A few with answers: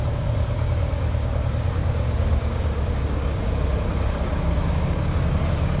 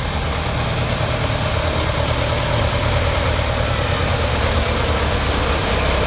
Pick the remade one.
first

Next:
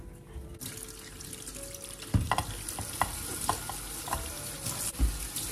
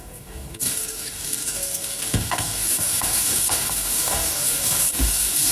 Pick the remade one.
second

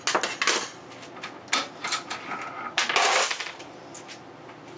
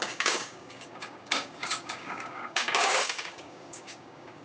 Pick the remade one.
second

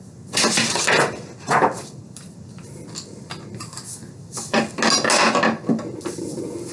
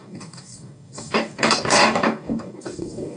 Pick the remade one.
second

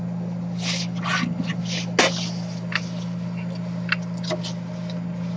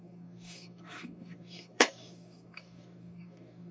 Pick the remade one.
second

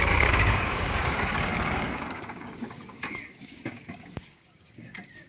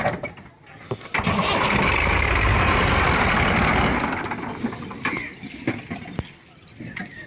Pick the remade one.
first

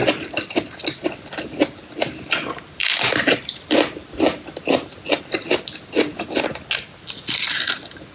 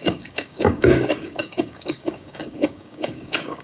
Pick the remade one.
second